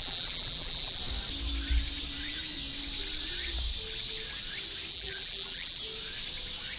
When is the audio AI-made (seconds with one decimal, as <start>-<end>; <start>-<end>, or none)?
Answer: 0.0-1.0; 4.9-5.8